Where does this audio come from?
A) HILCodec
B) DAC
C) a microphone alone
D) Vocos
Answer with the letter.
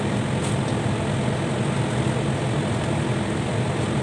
C